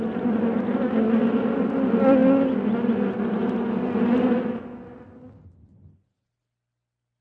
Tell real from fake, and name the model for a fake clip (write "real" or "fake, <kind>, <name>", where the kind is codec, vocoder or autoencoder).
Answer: real